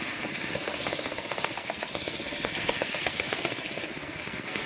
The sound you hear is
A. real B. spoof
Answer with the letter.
B